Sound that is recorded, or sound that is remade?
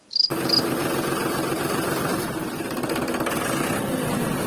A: recorded